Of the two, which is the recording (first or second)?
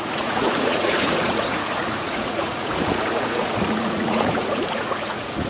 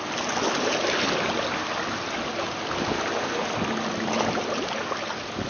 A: second